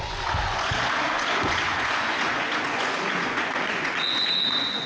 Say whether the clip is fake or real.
fake